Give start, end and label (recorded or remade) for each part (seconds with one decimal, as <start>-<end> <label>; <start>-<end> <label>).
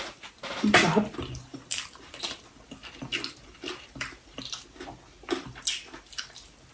0.0-6.7 recorded